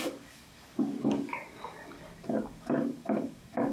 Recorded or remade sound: remade